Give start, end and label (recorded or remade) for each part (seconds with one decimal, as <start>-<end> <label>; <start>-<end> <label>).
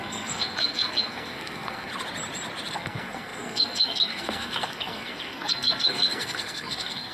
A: 0.0-1.9 remade; 1.9-2.7 recorded; 2.7-7.1 remade